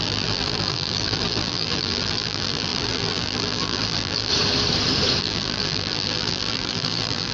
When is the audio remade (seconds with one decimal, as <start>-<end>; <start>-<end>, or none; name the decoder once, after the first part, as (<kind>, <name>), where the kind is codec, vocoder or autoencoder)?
0.0-4.3 (vocoder, BigVGAN v2); 5.2-7.3